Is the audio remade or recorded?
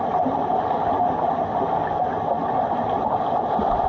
recorded